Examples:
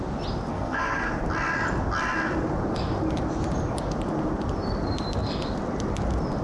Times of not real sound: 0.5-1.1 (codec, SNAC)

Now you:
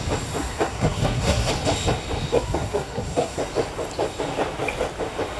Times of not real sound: 0.4-1.5 (codec, SNAC); 2.3-3.4